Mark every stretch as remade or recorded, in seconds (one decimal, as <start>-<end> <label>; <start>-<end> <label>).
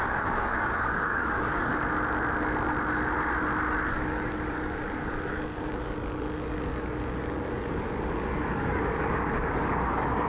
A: 0.0-1.7 remade; 1.7-3.9 recorded; 3.9-10.3 remade